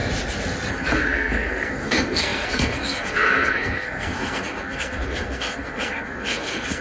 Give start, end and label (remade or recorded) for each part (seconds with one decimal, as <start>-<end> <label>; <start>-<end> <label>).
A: 0.0-0.7 recorded; 0.7-6.8 remade